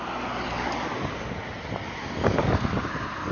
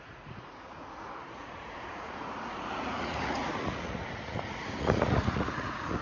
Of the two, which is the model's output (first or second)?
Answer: second